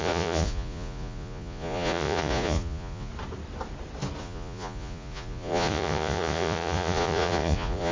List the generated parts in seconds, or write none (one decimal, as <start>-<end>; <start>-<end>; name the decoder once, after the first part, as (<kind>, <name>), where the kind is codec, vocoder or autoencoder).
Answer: 0.0-3.1 (vocoder, Vocos); 4.2-7.9